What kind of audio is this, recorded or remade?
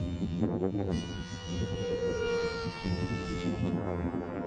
remade